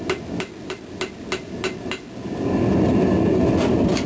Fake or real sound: real